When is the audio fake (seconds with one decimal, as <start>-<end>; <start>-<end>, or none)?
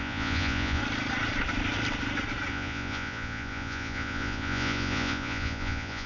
0.0-0.8; 2.5-6.1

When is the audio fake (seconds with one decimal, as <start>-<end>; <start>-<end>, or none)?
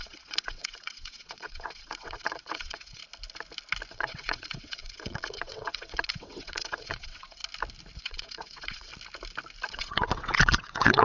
0.0-3.0; 3.9-7.4; 8.0-8.9; 9.7-11.0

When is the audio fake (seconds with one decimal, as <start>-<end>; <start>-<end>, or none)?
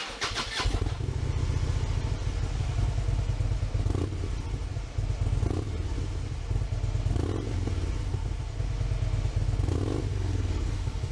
10.1-11.1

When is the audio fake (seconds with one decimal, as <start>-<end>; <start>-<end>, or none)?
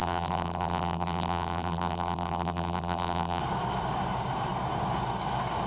0.0-3.4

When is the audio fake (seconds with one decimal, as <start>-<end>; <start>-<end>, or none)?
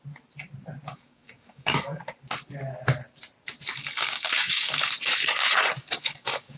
0.9-2.0; 3.7-4.9; 5.8-6.6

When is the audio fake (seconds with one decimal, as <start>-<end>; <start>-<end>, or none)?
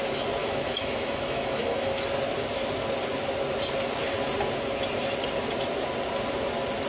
0.4-2.0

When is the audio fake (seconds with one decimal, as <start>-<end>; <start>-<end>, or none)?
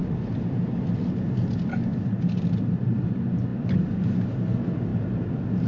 0.0-0.6; 1.9-2.6; 3.5-4.0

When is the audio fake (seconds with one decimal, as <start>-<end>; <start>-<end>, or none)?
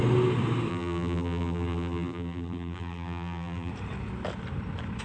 0.7-3.7